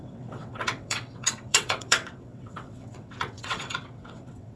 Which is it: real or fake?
fake